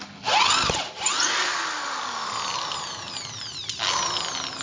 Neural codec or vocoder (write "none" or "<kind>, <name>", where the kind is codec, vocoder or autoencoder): none